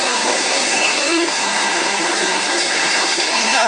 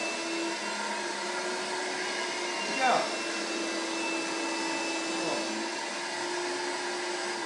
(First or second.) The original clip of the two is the second